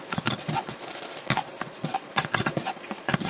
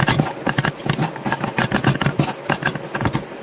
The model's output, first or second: first